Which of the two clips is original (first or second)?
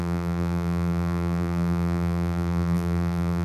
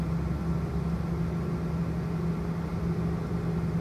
second